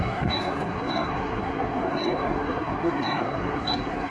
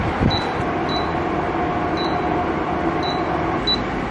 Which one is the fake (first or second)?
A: first